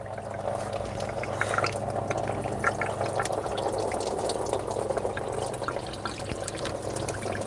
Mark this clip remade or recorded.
recorded